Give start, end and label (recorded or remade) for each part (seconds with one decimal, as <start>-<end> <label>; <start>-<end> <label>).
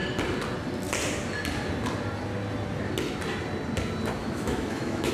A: 0.0-4.2 recorded; 4.2-5.1 remade